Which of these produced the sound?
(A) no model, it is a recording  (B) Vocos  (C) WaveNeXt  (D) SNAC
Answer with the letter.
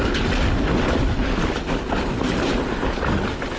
A